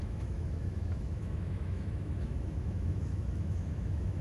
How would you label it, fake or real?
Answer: fake